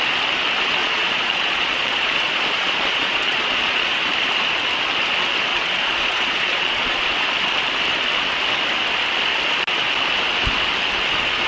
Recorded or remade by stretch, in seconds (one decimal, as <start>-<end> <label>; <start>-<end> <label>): 0.0-0.8 recorded; 0.8-3.9 remade; 3.9-5.5 recorded; 5.5-7.0 remade; 7.0-11.5 recorded